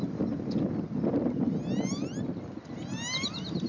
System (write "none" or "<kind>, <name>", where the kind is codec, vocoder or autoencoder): none